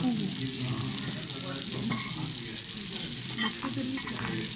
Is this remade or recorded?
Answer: recorded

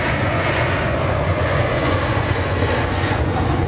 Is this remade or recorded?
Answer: remade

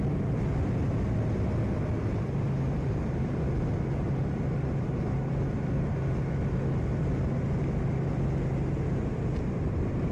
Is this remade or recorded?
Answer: recorded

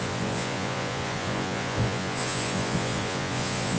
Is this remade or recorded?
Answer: remade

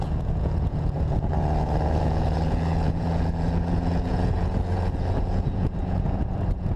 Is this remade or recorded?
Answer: remade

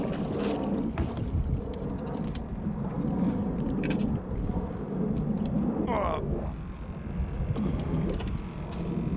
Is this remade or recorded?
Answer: recorded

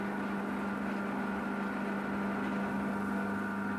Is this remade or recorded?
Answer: recorded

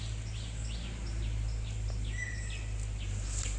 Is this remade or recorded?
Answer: recorded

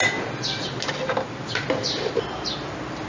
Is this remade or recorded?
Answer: recorded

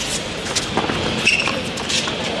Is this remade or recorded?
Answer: recorded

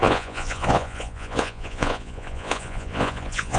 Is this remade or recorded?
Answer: remade